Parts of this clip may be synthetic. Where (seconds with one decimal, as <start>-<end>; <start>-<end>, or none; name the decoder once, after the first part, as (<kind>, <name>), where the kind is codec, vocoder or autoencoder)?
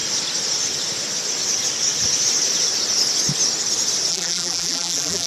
4.1-5.3 (vocoder, BigVGAN v2)